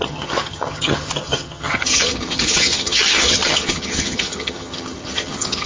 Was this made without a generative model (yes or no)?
no